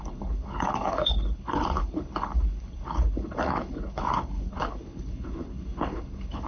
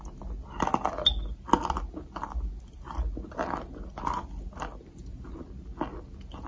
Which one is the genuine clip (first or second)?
second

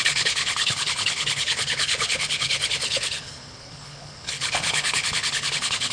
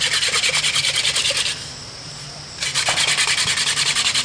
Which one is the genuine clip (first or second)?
second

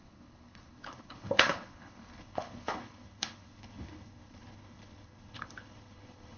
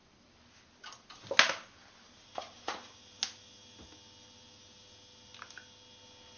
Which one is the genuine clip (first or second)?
second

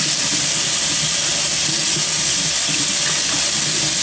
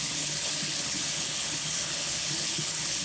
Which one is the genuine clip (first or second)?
first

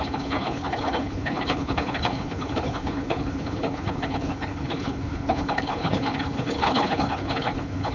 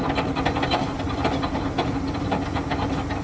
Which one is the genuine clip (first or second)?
second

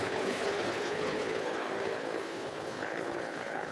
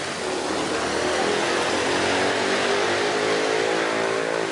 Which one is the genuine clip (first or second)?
second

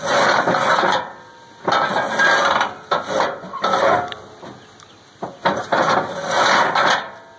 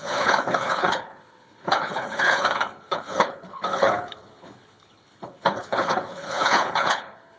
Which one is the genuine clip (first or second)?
first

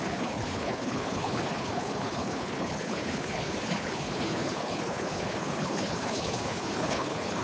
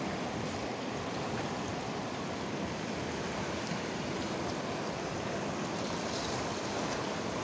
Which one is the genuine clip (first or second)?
second